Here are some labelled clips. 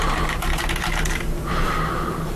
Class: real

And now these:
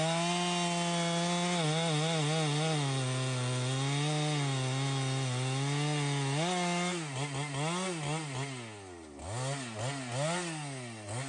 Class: real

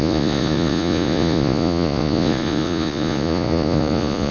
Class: fake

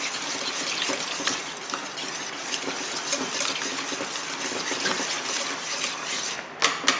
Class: real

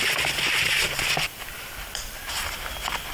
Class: fake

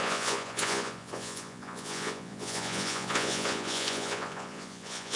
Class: fake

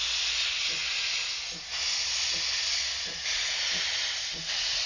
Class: real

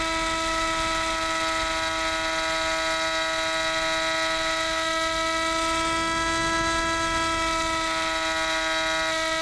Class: real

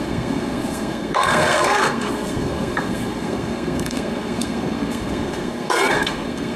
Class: fake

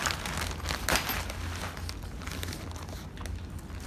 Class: real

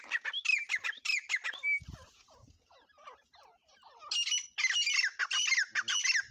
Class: real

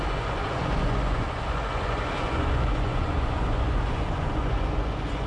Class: fake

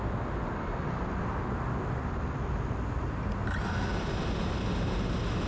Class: real